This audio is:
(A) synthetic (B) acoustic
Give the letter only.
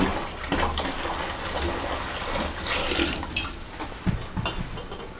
B